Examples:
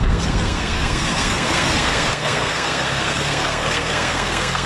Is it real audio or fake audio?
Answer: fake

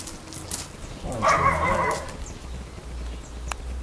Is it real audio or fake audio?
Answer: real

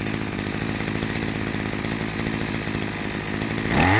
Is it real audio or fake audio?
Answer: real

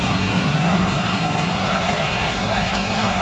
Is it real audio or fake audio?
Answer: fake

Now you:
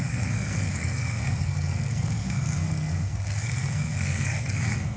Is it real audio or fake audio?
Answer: fake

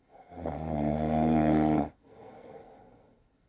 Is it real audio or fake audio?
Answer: fake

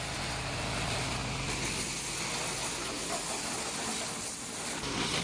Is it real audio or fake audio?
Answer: real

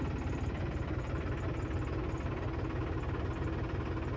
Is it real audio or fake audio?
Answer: real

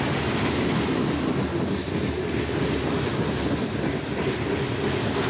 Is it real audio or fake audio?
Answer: real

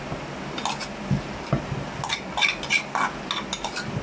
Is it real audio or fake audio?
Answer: real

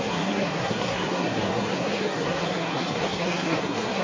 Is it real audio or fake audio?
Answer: fake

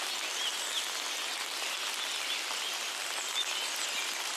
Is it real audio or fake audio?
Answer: real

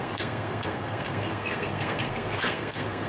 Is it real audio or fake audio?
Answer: fake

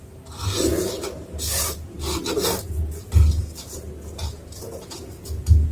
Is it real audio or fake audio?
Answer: real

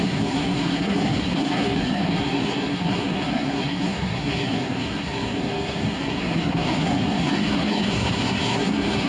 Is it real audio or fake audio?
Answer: fake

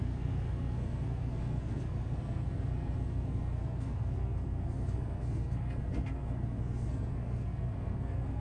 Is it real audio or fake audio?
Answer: fake